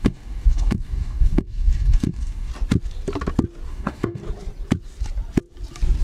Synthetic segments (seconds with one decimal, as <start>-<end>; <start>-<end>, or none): 0.0-2.5; 3.7-4.2